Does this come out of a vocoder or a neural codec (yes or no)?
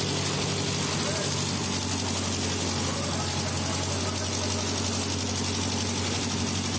no